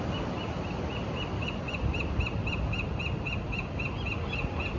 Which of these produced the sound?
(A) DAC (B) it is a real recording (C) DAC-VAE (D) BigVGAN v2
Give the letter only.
B